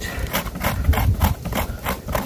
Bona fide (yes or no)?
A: yes